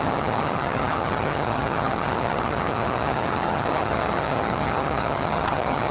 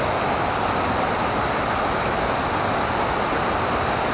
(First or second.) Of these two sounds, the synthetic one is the first